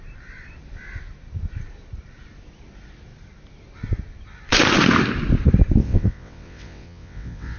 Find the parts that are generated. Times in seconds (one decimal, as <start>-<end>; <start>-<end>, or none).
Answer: 5.8-7.6